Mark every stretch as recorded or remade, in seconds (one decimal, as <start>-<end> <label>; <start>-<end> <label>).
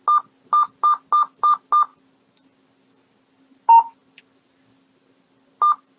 0.0-6.0 recorded